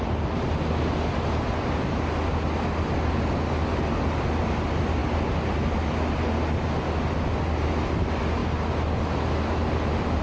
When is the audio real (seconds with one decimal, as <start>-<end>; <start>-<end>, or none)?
0.0-10.2